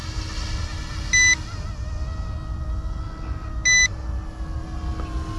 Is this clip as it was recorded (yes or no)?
yes